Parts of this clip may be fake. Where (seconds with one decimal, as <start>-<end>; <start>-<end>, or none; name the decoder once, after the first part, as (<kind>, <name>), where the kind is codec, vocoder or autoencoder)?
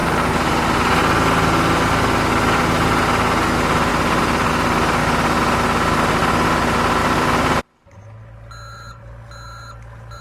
0.0-1.0 (vocoder, BigVGAN v2); 3.9-4.5; 7.0-7.6